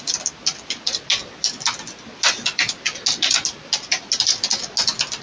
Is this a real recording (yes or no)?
yes